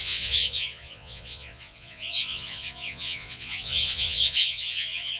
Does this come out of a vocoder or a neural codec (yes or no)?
yes